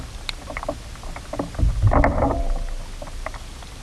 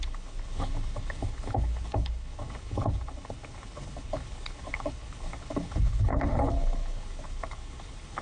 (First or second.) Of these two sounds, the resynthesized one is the second